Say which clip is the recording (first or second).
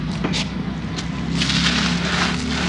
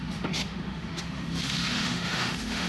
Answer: first